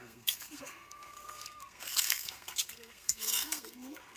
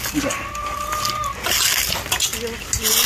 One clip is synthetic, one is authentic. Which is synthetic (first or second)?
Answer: first